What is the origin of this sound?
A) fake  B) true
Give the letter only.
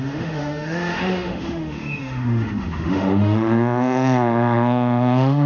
A